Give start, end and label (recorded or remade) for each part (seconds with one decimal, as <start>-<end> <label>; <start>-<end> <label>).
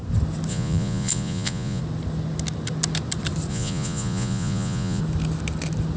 0.0-0.5 recorded; 0.5-1.8 remade; 1.8-3.5 recorded; 3.5-5.0 remade; 5.0-6.0 recorded